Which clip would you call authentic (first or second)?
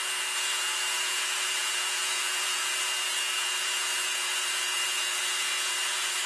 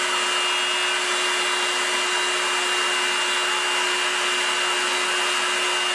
second